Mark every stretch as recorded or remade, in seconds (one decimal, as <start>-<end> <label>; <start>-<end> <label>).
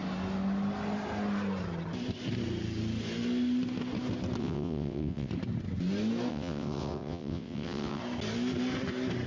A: 0.0-4.4 recorded; 4.4-5.3 remade; 5.3-6.3 recorded; 6.3-8.0 remade; 8.0-9.3 recorded